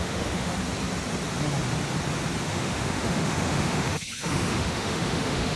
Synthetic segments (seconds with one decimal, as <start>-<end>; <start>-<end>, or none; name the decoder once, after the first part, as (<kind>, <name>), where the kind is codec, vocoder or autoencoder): 0.0-0.5 (autoencoder, DAC-VAE); 2.4-5.6